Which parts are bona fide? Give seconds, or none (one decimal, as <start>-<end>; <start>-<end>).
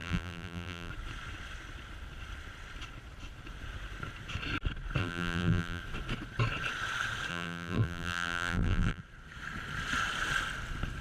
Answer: 0.9-5.0; 5.8-7.3; 9.0-11.0